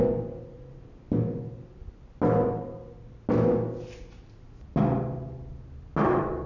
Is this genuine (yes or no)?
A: yes